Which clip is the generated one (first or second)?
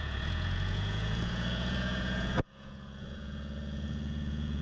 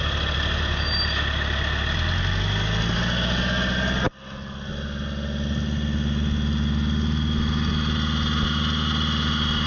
first